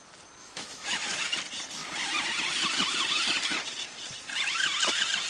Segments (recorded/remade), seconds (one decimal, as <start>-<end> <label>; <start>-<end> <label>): 0.0-0.4 recorded; 0.4-1.2 remade; 1.2-5.3 recorded